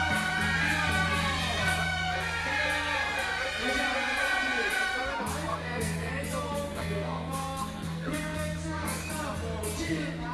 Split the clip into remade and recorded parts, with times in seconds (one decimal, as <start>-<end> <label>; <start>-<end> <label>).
0.0-5.5 recorded; 5.5-6.1 remade; 6.1-6.7 recorded; 6.7-9.1 remade; 9.1-10.3 recorded